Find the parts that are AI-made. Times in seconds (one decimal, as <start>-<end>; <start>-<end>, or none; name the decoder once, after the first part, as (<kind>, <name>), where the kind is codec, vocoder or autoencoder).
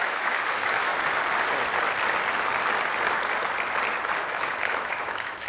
0.0-0.9 (autoencoder, DAC-VAE); 4.2-5.5